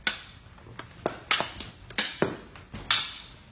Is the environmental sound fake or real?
real